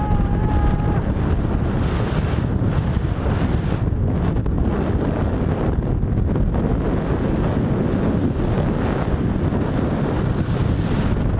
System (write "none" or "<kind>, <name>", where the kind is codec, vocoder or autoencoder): none